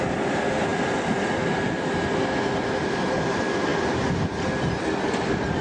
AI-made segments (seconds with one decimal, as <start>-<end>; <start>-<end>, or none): 0.7-1.5